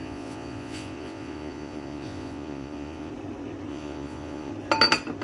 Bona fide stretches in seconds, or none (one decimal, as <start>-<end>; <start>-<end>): 3.1-3.7; 4.5-5.2